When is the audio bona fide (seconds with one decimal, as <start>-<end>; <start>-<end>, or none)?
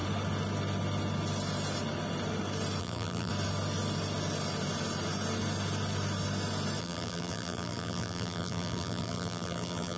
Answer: 0.0-2.8; 3.3-6.8